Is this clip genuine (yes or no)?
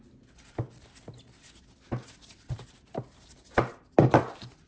yes